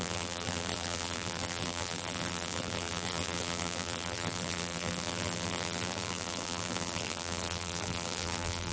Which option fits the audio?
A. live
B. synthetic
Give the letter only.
B